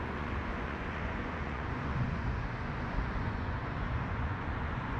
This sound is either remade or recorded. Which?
remade